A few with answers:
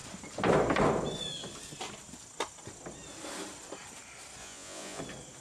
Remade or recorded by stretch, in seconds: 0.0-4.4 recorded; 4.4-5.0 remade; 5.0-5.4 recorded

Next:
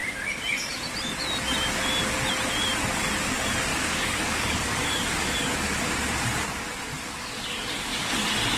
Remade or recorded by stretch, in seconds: 0.0-3.7 recorded; 3.7-5.8 remade; 5.8-6.9 recorded; 6.9-8.1 remade; 8.1-8.6 recorded

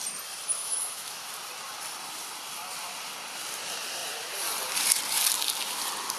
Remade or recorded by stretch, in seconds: 0.0-0.6 recorded; 0.6-1.3 remade; 1.3-6.2 recorded